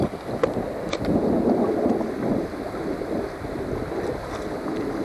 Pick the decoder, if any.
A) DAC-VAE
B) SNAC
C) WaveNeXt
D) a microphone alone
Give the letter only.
D